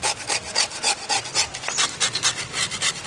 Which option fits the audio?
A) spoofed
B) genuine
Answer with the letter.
B